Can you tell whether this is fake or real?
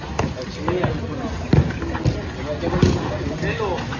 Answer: real